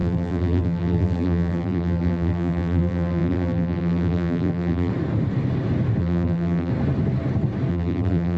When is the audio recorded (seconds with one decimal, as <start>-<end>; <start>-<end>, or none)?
4.9-6.0; 6.7-7.7